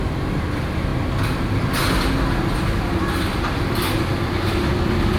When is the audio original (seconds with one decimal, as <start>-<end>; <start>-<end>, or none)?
0.0-5.2